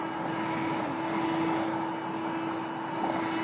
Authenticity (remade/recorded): recorded